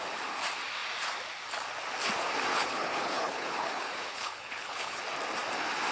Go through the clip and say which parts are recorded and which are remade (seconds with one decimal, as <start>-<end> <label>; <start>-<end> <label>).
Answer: 0.0-2.5 recorded; 2.5-5.0 remade; 5.0-5.9 recorded